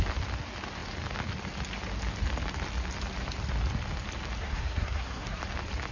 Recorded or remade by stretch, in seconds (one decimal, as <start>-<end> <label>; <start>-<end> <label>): 0.0-4.4 recorded; 4.4-5.4 remade; 5.4-5.9 recorded